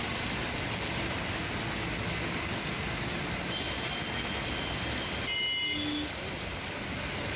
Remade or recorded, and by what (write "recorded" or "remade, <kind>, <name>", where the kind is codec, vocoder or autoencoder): recorded